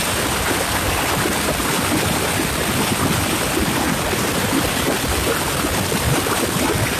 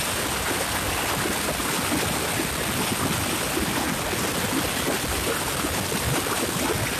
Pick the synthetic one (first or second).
first